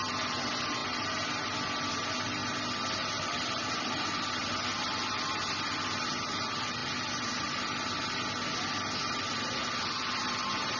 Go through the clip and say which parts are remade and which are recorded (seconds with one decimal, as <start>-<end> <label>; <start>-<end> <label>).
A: 0.0-10.8 recorded